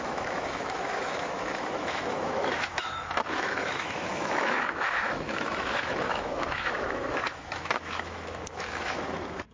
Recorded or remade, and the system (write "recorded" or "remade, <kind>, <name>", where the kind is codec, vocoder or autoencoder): remade, autoencoder, DAC-VAE